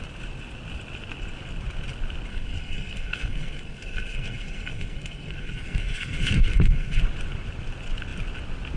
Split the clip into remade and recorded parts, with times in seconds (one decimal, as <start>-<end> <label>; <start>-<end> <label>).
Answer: 0.0-2.3 recorded; 2.3-7.0 remade; 7.0-8.8 recorded